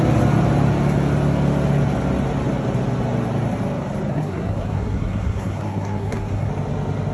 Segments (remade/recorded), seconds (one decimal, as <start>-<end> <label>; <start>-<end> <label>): 0.0-4.1 recorded; 4.1-6.5 remade; 6.5-7.1 recorded